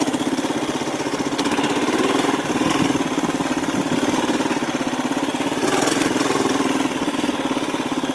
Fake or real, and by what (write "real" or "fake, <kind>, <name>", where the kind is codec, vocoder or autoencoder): real